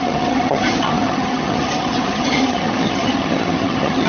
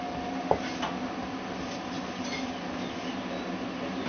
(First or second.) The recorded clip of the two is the second